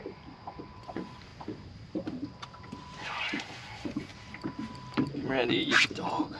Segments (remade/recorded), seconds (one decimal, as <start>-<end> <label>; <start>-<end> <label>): 0.0-1.3 remade; 1.3-2.6 recorded; 2.6-4.1 remade; 4.1-5.1 recorded; 5.1-6.4 remade